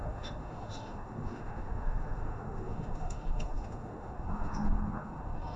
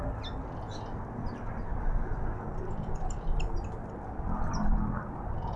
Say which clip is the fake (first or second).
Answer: first